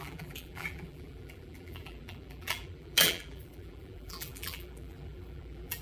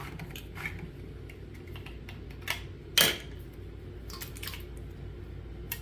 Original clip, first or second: second